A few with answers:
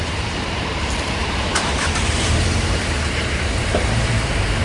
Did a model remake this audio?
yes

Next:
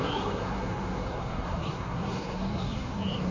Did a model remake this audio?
yes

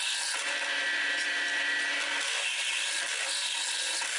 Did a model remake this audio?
no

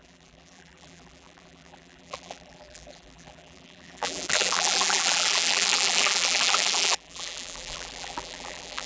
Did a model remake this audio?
yes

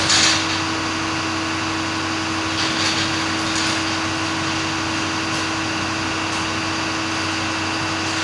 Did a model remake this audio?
no